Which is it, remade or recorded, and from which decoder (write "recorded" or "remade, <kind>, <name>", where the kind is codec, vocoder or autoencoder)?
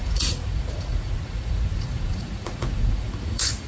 remade, vocoder, Vocos